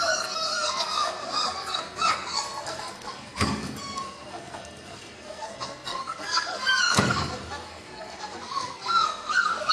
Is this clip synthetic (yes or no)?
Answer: yes